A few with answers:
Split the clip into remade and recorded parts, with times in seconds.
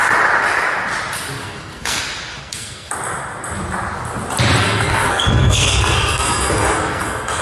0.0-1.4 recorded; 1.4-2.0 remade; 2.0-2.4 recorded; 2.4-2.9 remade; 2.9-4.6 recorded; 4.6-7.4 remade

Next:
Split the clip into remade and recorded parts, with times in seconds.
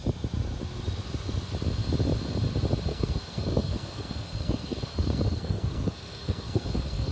0.0-2.9 recorded; 2.9-7.1 remade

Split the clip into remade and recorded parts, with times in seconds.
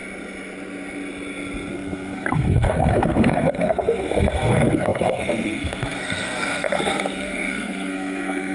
0.0-1.7 recorded; 1.7-8.5 remade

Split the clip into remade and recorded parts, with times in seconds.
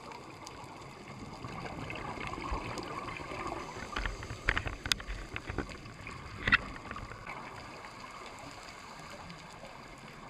0.0-10.3 recorded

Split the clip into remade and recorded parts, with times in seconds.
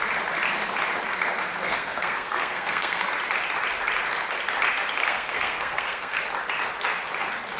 0.0-1.6 recorded; 1.6-3.1 remade; 3.1-5.0 recorded; 5.0-6.2 remade; 6.2-7.6 recorded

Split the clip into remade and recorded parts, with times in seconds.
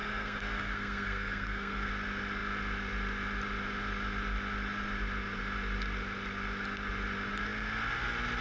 0.0-1.9 remade; 1.9-8.4 recorded